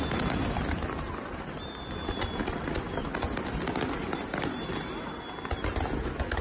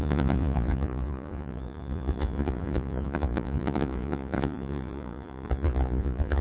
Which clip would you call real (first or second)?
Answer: first